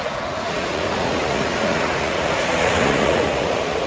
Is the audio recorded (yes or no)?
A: no